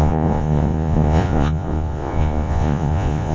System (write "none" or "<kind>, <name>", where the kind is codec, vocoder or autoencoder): vocoder, Vocos